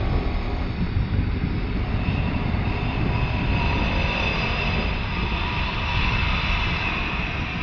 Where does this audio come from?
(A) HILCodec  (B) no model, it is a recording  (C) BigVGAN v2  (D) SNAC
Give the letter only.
C